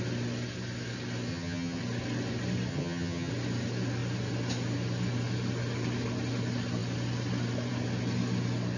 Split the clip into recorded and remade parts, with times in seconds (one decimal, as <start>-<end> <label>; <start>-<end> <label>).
0.0-1.3 recorded; 1.3-1.8 remade; 1.8-2.7 recorded; 2.7-3.3 remade; 3.3-8.8 recorded

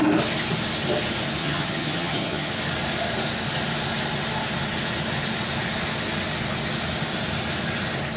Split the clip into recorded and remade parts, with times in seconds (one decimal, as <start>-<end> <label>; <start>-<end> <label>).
0.0-1.4 recorded; 1.4-2.5 remade; 2.5-8.2 recorded

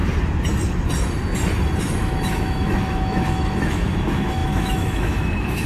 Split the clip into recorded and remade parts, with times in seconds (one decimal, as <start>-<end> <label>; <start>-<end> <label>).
0.0-1.8 recorded; 1.8-5.7 remade

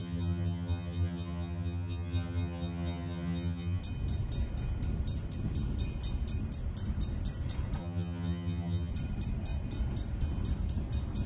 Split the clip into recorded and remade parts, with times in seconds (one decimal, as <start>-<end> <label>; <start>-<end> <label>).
0.0-3.8 remade; 3.8-7.8 recorded; 7.8-8.9 remade; 8.9-11.3 recorded

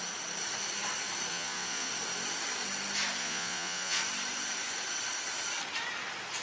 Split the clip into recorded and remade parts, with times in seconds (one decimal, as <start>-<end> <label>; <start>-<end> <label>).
0.0-1.3 recorded; 1.3-1.9 remade; 1.9-3.2 recorded; 3.2-4.0 remade; 4.0-6.4 recorded